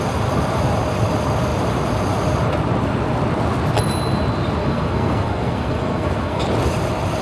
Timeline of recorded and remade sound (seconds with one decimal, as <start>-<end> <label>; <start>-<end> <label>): 0.0-4.6 recorded; 4.6-6.4 remade; 6.4-7.2 recorded